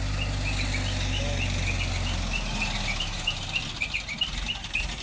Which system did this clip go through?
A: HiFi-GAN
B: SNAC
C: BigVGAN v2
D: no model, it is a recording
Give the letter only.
D